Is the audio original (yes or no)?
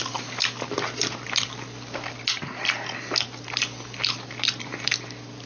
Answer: yes